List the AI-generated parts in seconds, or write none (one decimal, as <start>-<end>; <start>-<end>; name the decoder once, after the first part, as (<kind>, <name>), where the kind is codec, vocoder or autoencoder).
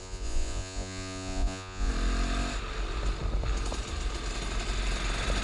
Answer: 0.0-1.9 (vocoder, Vocos)